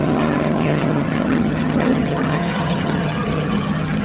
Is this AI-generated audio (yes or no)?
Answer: yes